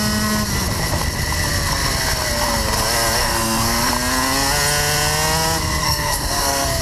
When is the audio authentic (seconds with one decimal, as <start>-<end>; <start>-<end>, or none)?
0.0-3.2; 3.9-5.8